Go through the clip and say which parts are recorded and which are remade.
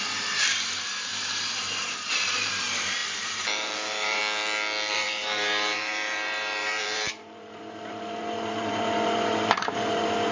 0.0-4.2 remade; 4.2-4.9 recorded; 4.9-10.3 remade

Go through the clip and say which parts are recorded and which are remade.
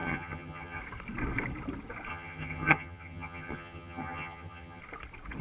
0.0-0.8 remade; 0.8-2.1 recorded; 2.1-4.8 remade; 4.8-5.4 recorded